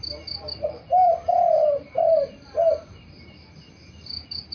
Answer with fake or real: fake